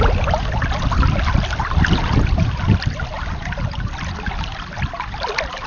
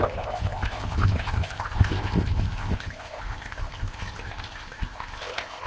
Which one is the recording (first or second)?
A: first